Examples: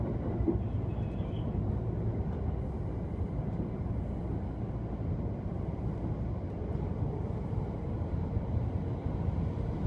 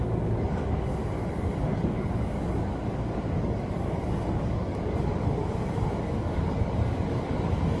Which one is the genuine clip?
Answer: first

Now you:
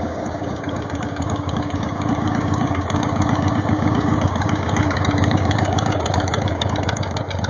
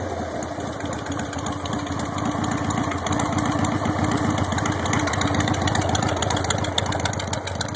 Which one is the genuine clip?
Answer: second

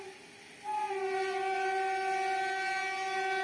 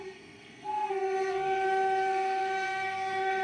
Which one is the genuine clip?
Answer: first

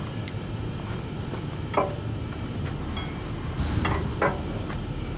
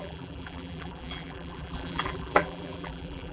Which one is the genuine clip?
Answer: first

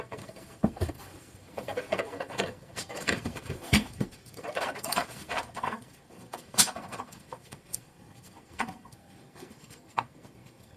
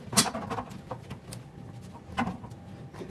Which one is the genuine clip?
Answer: second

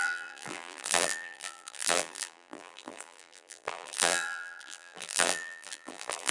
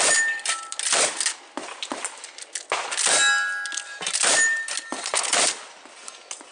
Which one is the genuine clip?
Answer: second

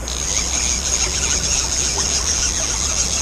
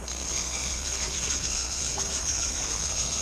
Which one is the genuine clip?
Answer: first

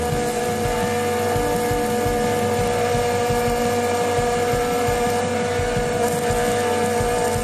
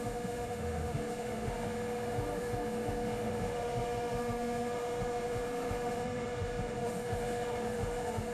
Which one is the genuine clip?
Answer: first